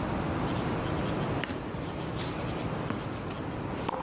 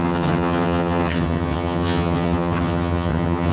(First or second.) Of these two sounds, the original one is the first